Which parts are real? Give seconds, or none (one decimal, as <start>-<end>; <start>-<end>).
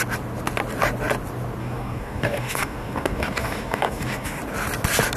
0.0-1.6; 4.4-5.2